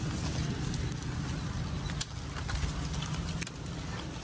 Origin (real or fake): real